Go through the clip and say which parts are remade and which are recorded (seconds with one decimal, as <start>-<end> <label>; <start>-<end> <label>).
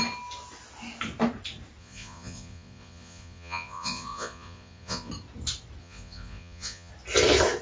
0.0-1.8 recorded; 1.8-5.1 remade; 5.1-5.8 recorded; 5.8-6.9 remade; 6.9-7.6 recorded